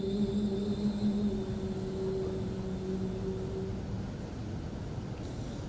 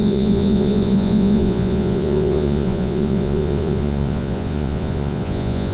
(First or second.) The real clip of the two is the first